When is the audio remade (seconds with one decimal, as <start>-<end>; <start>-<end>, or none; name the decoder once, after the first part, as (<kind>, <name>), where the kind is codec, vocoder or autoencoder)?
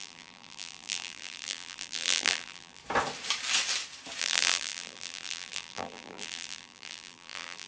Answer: 0.0-2.8 (vocoder, BigVGAN v2); 4.2-7.7